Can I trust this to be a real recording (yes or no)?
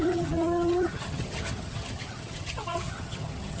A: no